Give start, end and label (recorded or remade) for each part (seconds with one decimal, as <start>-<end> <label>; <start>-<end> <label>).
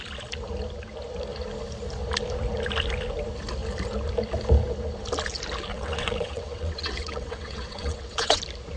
0.0-5.7 recorded; 5.7-8.4 remade; 8.4-8.8 recorded